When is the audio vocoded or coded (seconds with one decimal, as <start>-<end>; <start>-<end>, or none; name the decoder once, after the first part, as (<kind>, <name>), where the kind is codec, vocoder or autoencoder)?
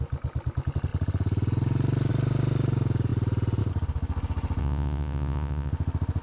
4.6-5.7 (vocoder, Vocos)